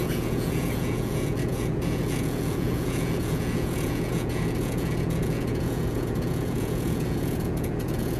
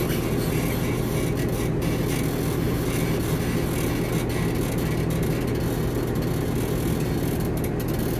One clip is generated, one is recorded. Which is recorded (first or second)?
second